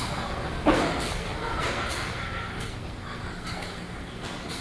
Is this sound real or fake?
fake